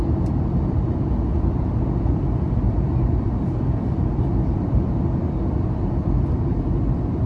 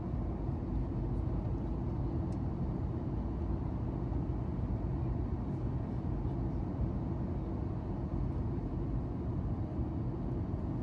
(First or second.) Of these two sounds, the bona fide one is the second